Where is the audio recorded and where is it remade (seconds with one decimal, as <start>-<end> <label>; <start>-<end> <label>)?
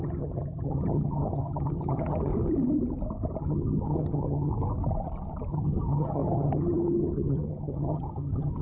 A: 0.0-2.3 remade; 2.3-3.4 recorded; 3.4-4.5 remade; 4.5-5.5 recorded; 5.5-8.6 remade